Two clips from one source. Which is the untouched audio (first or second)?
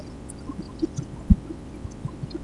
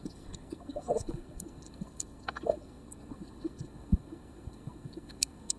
first